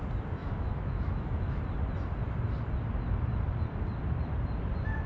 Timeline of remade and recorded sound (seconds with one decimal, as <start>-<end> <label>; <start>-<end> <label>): 0.0-0.4 recorded; 0.4-1.6 remade; 1.6-5.1 recorded